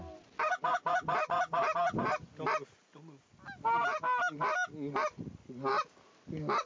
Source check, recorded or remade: recorded